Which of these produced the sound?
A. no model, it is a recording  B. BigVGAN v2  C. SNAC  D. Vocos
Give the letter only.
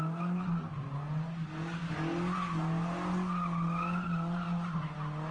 A